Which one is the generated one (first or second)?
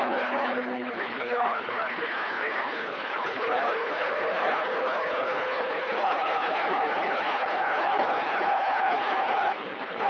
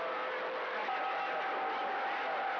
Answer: first